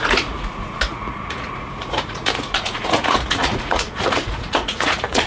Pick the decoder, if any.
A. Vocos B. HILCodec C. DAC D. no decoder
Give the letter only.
A